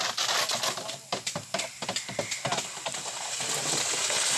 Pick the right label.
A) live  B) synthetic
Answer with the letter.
A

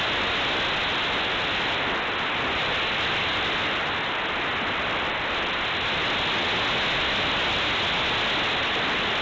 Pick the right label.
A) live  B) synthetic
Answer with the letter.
A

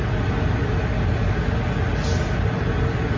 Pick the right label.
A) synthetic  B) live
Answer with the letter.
B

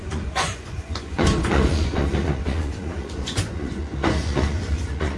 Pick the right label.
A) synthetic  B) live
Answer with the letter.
A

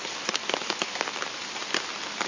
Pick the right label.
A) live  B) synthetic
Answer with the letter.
A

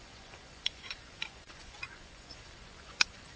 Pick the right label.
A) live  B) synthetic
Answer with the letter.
B